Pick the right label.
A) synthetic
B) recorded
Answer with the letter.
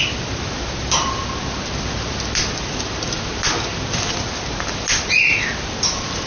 B